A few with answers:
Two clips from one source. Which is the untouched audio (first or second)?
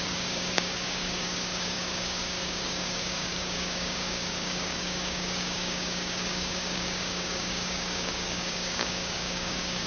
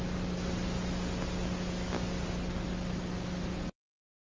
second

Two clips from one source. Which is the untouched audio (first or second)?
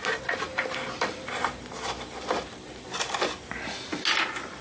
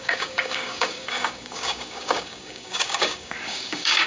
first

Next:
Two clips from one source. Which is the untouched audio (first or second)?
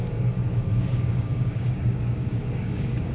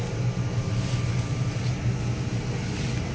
second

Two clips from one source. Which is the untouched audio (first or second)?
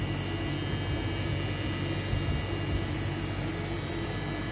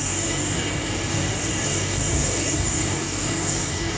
first